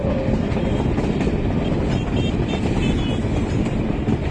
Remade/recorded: recorded